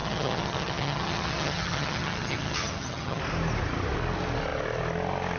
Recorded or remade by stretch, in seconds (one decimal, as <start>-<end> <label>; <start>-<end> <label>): 0.0-3.2 remade; 3.2-5.4 recorded